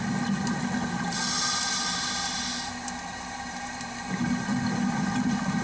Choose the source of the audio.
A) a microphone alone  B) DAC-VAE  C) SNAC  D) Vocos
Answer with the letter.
A